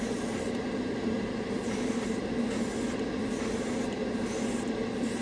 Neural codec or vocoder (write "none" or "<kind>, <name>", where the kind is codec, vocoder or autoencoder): none